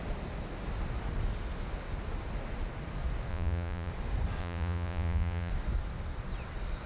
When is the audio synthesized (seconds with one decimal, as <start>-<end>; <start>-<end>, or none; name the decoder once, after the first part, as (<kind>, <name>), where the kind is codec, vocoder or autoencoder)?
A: 3.3-3.9 (vocoder, Vocos); 4.4-5.5